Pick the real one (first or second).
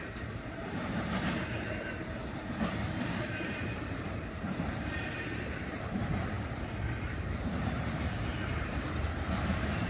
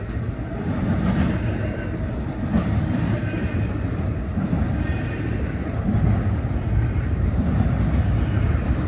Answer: second